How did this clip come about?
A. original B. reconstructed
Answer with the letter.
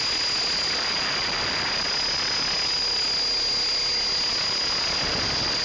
A